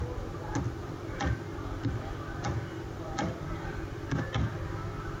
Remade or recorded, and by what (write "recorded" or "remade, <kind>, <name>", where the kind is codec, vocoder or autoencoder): recorded